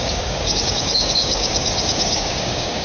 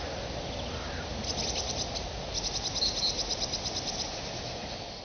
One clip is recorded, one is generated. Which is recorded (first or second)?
second